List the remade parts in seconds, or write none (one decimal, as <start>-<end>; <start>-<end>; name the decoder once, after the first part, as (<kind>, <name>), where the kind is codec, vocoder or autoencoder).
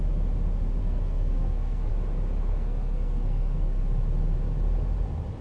0.8-1.9 (codec, SNAC); 2.5-3.8